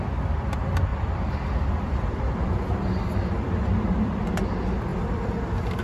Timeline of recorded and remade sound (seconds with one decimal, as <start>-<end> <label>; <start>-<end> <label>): 0.0-0.9 recorded; 0.9-4.2 remade; 4.2-4.9 recorded; 4.9-5.8 remade